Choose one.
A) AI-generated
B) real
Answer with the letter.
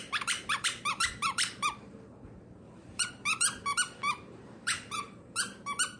A